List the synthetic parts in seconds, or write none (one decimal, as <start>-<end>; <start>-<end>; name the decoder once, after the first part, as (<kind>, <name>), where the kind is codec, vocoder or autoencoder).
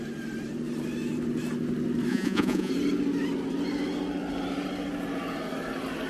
2.1-2.7 (vocoder, Vocos)